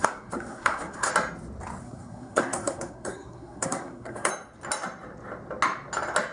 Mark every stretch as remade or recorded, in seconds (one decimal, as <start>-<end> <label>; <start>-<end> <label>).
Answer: 0.0-1.1 remade; 1.1-1.8 recorded; 1.8-4.3 remade; 4.3-6.3 recorded